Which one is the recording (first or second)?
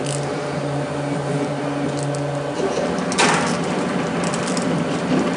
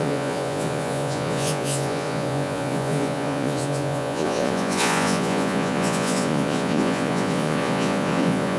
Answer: first